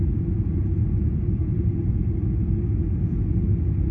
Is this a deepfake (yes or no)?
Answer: no